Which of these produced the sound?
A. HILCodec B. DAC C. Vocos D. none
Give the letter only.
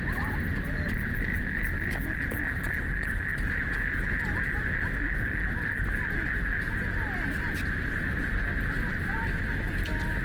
D